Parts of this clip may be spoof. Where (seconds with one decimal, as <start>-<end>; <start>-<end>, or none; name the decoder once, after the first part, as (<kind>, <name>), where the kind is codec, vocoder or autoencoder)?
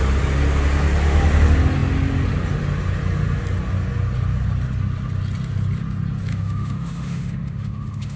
6.3-8.2 (autoencoder, DAC-VAE)